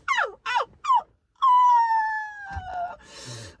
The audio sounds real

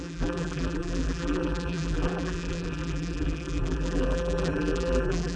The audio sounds fake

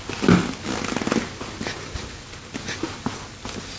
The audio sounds real